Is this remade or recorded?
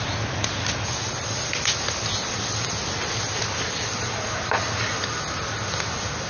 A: recorded